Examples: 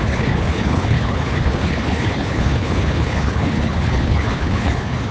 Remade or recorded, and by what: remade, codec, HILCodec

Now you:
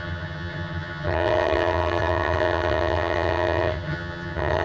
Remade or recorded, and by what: remade, vocoder, HiFi-GAN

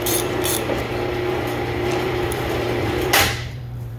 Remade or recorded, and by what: remade, vocoder, BigVGAN v2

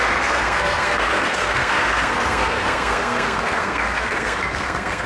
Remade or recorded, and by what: remade, codec, SNAC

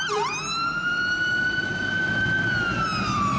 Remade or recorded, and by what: remade, vocoder, BigVGAN v2